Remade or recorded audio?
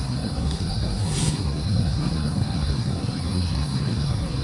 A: remade